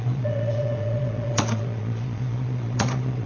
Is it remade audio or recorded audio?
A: remade